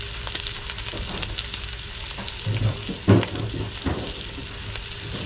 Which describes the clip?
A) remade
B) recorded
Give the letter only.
B